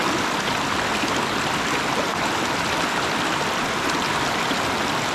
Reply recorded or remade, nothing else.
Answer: recorded